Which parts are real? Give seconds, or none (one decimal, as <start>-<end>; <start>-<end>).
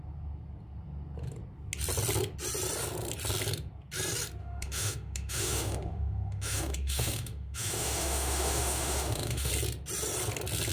0.0-4.4; 9.5-10.7